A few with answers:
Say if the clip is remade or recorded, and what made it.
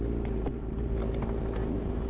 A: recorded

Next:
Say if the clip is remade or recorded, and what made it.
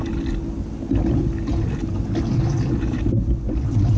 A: recorded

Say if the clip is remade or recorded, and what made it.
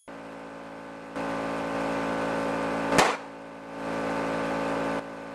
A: recorded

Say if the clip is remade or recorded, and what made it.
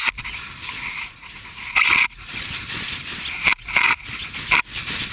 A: recorded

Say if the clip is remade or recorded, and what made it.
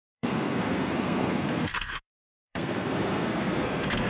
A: remade, codec, SNAC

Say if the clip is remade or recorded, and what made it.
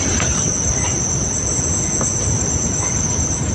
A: recorded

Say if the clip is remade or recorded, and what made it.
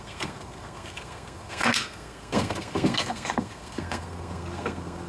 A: remade, codec, SNAC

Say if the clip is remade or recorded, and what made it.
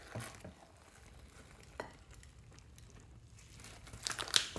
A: recorded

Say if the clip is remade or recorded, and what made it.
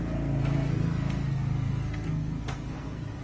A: remade, codec, SNAC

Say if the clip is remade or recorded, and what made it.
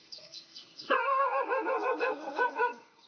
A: remade, codec, SNAC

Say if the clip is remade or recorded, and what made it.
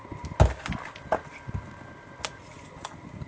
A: recorded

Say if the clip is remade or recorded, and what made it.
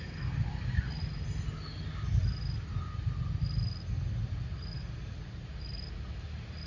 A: recorded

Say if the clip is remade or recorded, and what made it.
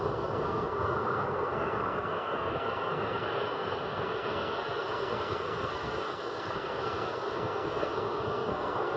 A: remade, codec, SNAC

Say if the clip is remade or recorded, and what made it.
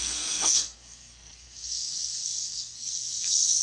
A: remade, codec, SNAC